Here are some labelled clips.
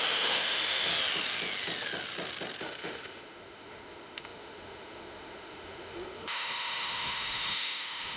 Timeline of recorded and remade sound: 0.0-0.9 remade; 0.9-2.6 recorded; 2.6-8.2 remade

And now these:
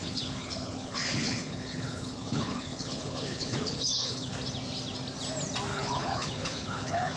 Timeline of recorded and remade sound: 0.0-4.3 remade; 4.3-5.7 recorded; 5.7-7.2 remade